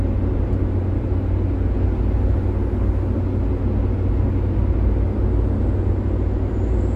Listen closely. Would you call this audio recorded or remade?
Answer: recorded